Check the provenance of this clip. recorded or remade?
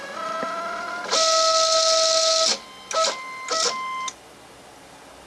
recorded